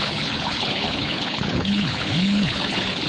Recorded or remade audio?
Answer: remade